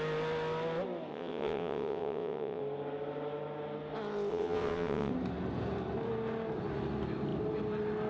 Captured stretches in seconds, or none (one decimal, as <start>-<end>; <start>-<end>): 0.0-1.1; 2.6-4.3; 5.1-8.1